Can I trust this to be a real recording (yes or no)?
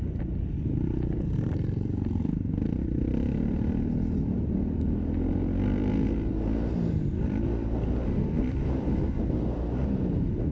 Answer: yes